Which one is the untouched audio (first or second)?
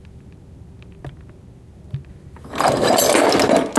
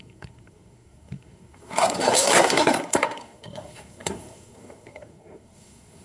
first